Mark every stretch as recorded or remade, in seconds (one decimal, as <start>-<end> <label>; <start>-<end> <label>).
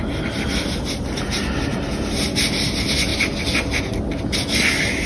0.0-5.1 recorded